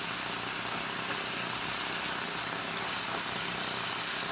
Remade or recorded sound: recorded